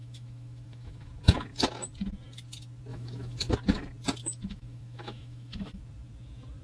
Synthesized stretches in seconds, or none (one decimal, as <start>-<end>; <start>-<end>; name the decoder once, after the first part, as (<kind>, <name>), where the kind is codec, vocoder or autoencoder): 0.0-1.1 (autoencoder, DAC-VAE); 2.9-3.5; 4.2-5.8